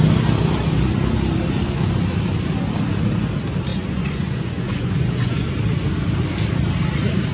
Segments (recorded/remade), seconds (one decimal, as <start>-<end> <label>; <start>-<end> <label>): 0.0-3.7 recorded; 3.7-5.5 remade; 5.5-7.3 recorded